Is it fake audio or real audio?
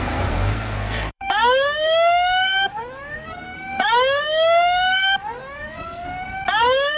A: fake